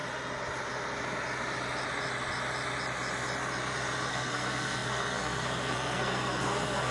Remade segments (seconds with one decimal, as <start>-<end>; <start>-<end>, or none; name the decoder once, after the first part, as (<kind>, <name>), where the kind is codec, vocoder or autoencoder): 4.1-6.9 (codec, SNAC)